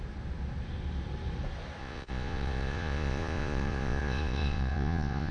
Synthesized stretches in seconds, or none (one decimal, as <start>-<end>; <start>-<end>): 1.8-5.3